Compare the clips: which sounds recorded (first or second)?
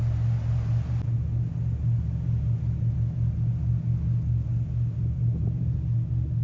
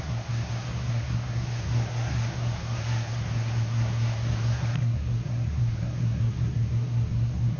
first